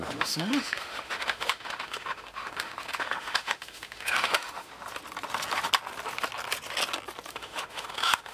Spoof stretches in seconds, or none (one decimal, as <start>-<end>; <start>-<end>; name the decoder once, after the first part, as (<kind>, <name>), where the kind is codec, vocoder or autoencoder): 0.0-4.7 (autoencoder, DAC-VAE); 7.3-8.3